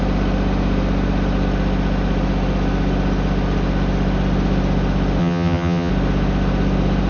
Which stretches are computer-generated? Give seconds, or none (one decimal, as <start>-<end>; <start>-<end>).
5.2-5.9

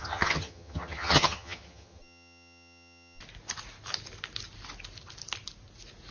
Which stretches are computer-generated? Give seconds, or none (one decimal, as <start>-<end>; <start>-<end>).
0.0-3.2

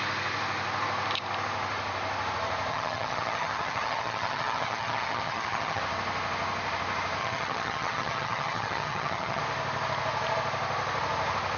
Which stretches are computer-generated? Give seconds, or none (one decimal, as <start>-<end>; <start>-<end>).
2.7-5.8; 7.2-9.4